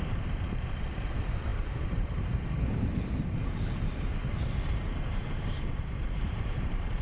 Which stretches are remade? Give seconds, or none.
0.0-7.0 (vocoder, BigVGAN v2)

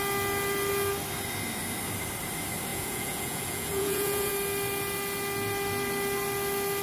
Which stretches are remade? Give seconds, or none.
2.7-4.3 (vocoder, Vocos)

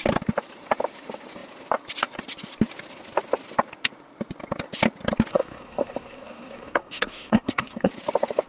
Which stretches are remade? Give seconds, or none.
5.3-7.9 (codec, SNAC)

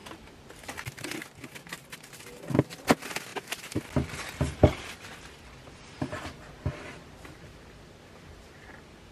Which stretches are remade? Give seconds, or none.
none

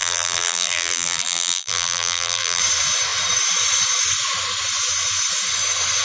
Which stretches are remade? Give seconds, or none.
0.0-2.6 (vocoder, BigVGAN v2)

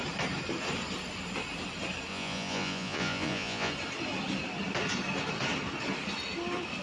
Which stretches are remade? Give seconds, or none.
2.1-3.7 (vocoder, Vocos)

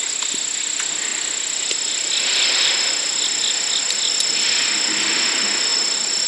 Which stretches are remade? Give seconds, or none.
1.1-4.2 (vocoder, BigVGAN v2); 5.7-6.3

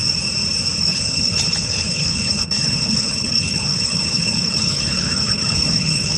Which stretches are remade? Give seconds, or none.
0.8-6.2 (codec, HILCodec)